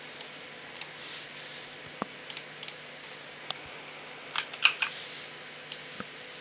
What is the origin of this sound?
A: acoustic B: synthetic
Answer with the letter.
A